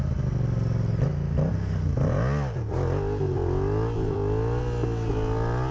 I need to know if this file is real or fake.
real